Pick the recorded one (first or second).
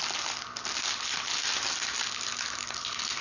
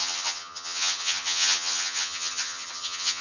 first